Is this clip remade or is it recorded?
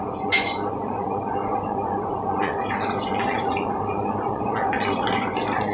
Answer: remade